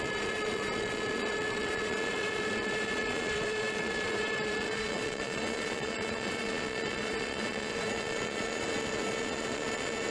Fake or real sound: fake